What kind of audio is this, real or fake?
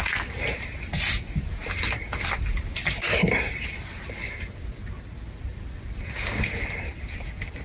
real